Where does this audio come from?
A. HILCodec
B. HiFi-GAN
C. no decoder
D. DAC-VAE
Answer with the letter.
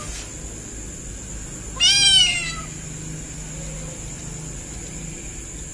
C